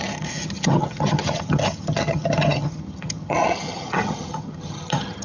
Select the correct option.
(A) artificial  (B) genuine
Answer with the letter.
A